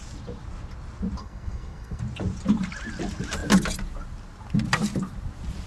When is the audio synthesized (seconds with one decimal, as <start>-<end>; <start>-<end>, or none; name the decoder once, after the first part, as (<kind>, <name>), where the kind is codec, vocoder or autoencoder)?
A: 1.2-2.0 (codec, SNAC)

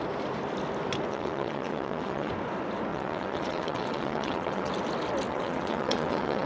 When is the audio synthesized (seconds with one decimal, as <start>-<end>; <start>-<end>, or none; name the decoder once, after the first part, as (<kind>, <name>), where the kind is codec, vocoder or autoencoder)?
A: 1.1-2.3 (vocoder, WaveNeXt); 2.9-4.7; 5.3-6.5

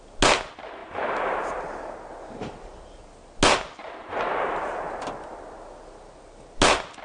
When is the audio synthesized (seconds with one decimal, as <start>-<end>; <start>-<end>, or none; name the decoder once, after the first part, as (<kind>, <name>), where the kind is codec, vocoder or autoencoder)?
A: 0.8-1.6 (vocoder, BigVGAN v2); 3.8-4.5

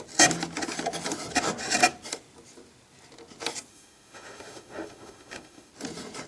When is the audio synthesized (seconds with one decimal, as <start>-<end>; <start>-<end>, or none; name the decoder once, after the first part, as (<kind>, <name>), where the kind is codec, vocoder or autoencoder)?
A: 3.7-5.7 (autoencoder, DAC-VAE)

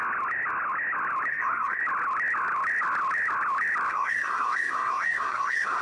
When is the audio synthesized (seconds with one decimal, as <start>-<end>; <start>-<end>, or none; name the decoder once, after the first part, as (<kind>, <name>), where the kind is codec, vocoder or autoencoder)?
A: 1.3-1.8 (codec, SNAC); 3.9-5.8